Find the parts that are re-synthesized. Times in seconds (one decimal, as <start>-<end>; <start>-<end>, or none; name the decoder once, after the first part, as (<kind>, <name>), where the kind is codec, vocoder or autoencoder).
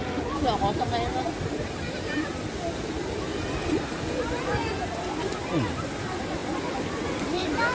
none